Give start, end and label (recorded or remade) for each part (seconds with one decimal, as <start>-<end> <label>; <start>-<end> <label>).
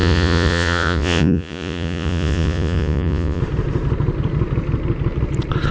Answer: 0.0-3.4 remade; 3.4-5.7 recorded